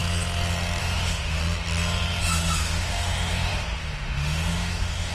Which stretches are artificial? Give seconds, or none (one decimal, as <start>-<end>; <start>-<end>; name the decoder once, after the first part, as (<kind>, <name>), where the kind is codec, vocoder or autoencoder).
0.8-1.4 (autoencoder, DAC-VAE); 2.2-5.1